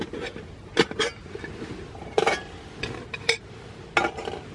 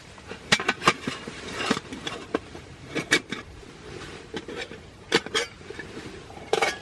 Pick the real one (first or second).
first